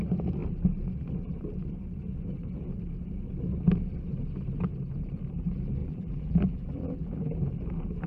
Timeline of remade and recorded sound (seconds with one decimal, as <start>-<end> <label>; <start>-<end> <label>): 0.0-5.8 recorded; 5.8-7.5 remade; 7.5-8.1 recorded

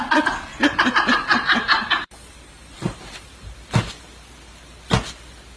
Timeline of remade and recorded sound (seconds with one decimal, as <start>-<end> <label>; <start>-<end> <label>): 0.0-0.5 recorded; 0.5-3.9 remade; 3.9-5.6 recorded

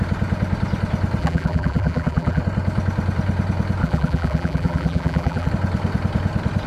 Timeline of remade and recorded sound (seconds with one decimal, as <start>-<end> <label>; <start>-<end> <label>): 0.0-1.2 recorded; 1.2-2.4 remade; 2.4-3.8 recorded; 3.8-5.5 remade; 5.5-6.7 recorded

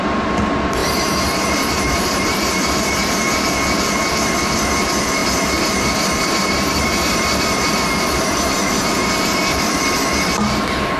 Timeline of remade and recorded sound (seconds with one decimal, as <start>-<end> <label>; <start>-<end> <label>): 0.0-0.8 recorded; 0.8-3.1 remade; 3.1-5.2 recorded; 5.2-9.9 remade; 9.9-11.0 recorded

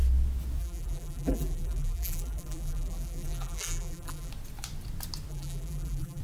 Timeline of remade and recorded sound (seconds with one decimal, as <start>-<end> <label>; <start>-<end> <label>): 0.0-0.6 recorded; 0.6-4.3 remade; 4.3-5.3 recorded; 5.3-6.2 remade

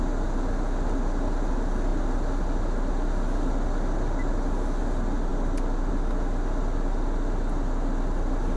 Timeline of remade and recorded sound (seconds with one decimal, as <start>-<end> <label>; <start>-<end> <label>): 0.0-8.6 recorded